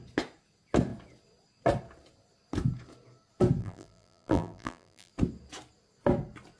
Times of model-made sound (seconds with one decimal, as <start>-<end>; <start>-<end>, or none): 3.6-5.1